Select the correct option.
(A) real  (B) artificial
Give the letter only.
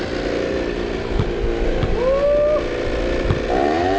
A